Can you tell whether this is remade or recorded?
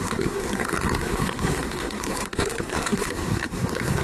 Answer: remade